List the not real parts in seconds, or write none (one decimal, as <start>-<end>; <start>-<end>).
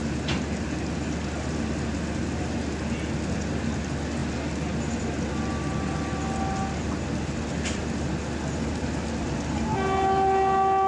none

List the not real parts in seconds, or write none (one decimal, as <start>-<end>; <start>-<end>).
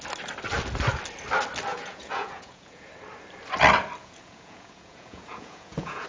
1.7-2.9; 4.0-6.1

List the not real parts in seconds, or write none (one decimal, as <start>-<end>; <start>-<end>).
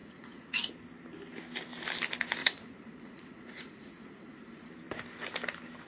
0.0-0.7; 2.4-4.7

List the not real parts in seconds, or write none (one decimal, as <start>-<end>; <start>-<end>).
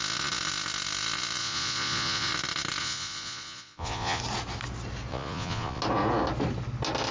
1.4-2.3; 2.8-4.2; 5.1-5.8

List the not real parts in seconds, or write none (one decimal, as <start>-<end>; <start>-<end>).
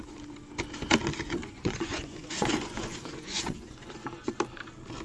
1.4-4.3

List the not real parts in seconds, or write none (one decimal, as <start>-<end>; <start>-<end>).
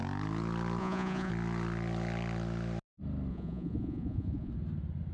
0.8-1.3; 3.3-4.5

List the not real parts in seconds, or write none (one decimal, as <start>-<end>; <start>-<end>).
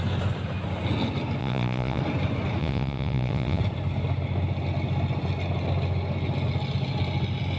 1.4-2.0; 2.6-3.6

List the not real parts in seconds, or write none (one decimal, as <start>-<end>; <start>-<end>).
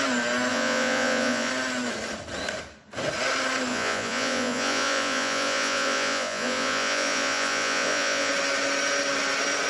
0.5-1.5; 3.7-8.3